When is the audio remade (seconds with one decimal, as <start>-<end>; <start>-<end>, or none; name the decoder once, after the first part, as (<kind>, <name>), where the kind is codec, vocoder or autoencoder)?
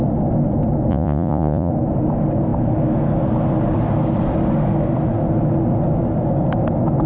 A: 0.9-1.7 (vocoder, Vocos)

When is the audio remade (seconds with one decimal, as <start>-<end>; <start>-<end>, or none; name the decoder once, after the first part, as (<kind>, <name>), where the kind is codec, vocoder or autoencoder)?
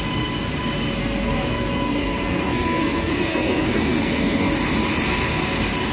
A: 1.0-4.5 (codec, SNAC)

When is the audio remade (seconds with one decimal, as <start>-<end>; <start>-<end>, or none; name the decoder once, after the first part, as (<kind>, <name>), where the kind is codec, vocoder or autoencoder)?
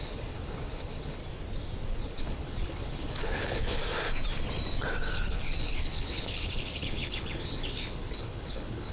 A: 0.0-1.2 (codec, HILCodec); 2.0-3.8; 5.1-8.9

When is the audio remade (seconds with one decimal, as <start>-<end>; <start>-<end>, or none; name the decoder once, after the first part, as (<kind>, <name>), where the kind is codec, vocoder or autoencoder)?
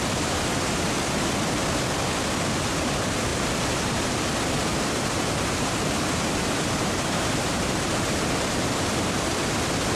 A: 3.3-4.2 (vocoder, BigVGAN v2); 4.7-9.4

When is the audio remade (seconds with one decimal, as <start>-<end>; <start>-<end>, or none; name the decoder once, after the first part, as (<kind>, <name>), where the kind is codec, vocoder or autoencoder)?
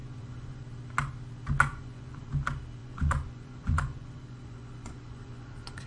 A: 0.0-0.6 (vocoder, Vocos); 1.7-2.3; 2.8-5.9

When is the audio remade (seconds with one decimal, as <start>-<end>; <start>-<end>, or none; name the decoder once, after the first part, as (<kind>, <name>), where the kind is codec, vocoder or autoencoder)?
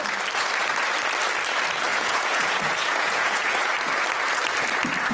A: 1.9-3.7 (vocoder, Vocos)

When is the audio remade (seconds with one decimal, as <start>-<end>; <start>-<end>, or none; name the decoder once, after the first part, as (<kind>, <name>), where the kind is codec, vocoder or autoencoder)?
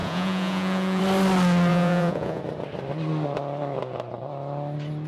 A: 0.0-1.0 (vocoder, Vocos); 1.7-2.4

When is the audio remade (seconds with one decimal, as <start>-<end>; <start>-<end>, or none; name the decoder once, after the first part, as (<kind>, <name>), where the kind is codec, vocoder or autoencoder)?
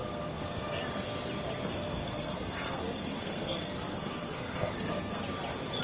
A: 0.0-0.8 (codec, SNAC); 1.7-5.2